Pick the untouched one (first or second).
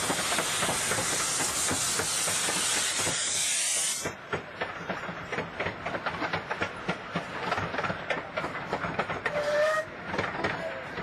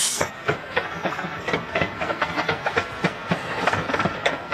first